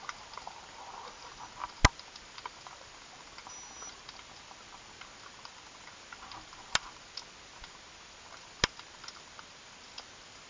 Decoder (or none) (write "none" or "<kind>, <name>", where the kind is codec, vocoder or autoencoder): none